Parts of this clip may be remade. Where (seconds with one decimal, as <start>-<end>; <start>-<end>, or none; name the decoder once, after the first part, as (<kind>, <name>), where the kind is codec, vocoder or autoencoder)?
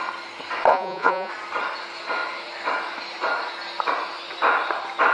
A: 0.7-1.3 (vocoder, Vocos)